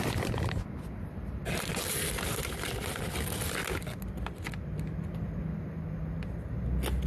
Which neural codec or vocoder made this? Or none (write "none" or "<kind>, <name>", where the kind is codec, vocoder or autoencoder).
none